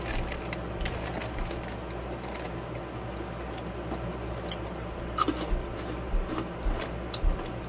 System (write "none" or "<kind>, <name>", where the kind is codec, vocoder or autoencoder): none